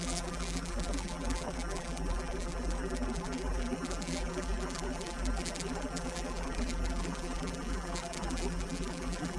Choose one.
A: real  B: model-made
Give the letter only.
B